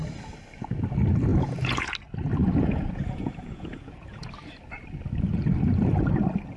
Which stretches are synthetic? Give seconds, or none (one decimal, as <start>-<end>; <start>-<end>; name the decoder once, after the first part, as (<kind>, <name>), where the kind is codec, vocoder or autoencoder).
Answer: 1.3-1.9 (vocoder, Vocos); 2.4-4.3